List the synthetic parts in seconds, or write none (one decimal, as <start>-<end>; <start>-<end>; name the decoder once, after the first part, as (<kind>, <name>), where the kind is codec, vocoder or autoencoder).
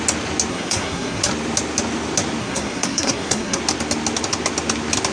0.5-1.2 (codec, SNAC); 2.4-3.6